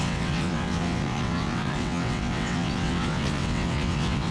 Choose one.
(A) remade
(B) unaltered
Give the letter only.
A